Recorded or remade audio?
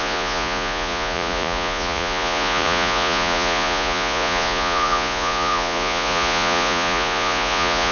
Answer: remade